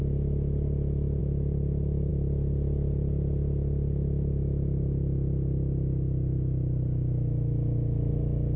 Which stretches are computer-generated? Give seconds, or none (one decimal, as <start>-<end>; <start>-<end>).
none